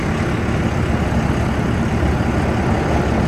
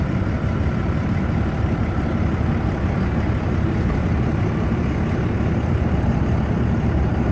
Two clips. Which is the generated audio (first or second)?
second